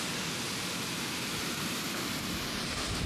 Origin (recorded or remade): recorded